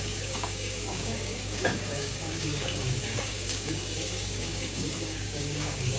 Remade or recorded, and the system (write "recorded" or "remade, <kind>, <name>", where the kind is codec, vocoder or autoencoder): remade, codec, DAC